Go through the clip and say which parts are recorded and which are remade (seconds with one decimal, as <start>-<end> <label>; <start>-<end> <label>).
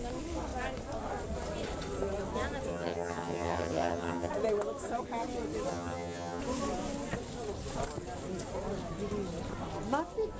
0.0-2.7 recorded; 2.7-4.3 remade; 4.3-5.7 recorded; 5.7-6.4 remade; 6.4-10.4 recorded